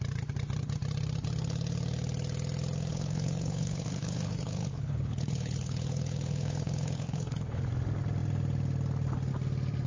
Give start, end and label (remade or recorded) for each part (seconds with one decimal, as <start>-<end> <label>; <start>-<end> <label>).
0.0-2.9 recorded; 2.9-7.7 remade; 7.7-9.9 recorded